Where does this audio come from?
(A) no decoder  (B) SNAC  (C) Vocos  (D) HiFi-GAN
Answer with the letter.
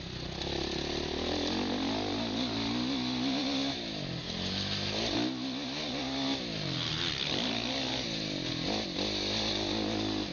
A